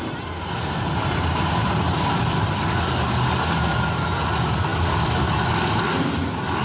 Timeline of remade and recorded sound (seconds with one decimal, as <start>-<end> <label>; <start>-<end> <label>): 0.0-1.6 recorded; 1.6-2.7 remade; 2.7-4.7 recorded; 4.7-5.2 remade; 5.2-6.6 recorded